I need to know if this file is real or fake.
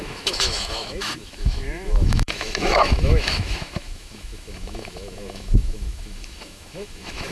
fake